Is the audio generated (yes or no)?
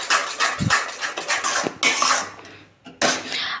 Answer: no